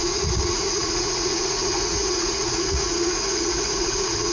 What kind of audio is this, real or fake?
fake